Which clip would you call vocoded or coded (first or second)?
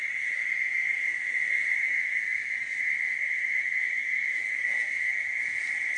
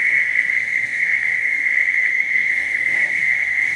second